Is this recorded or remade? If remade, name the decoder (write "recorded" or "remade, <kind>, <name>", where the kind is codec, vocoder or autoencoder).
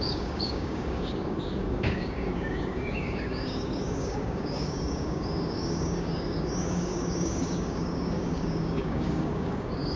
remade, codec, DAC